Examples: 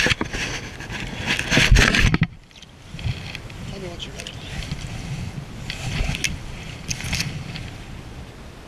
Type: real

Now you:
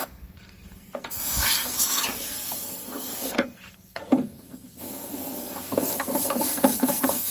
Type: fake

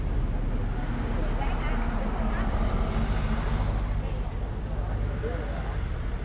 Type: real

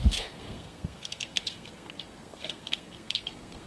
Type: fake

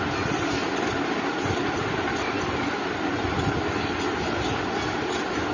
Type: real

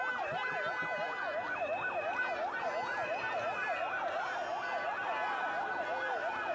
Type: real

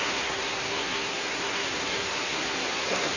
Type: fake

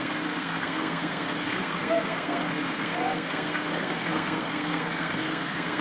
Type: fake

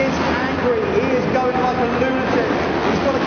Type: real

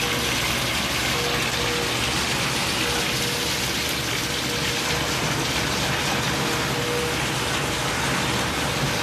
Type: real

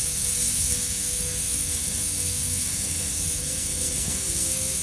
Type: fake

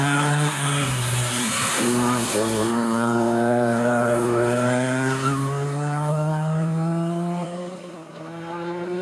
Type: fake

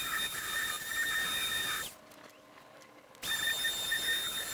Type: real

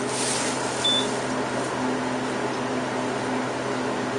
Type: real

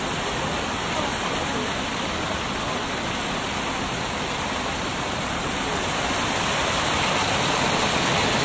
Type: real